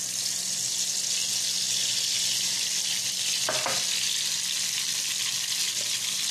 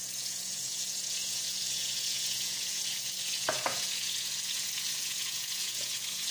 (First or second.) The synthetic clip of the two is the second